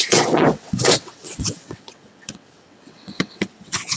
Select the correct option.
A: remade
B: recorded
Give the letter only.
A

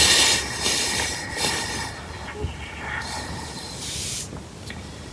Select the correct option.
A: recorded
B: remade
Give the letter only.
A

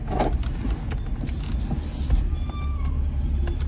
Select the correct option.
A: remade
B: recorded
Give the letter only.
B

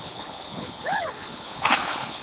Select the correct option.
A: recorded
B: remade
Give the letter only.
B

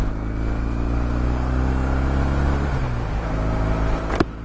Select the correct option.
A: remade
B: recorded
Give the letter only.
B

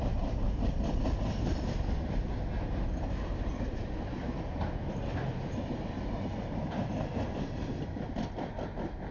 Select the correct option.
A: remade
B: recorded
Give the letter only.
B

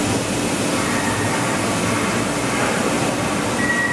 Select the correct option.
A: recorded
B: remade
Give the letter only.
A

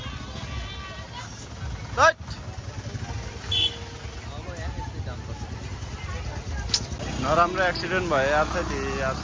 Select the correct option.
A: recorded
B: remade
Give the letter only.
A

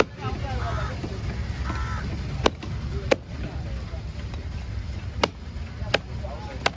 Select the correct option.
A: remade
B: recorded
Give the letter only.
B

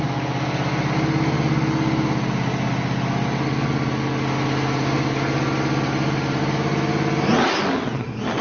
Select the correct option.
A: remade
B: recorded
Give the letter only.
B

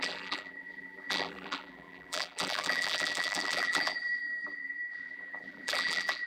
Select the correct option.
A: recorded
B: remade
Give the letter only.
B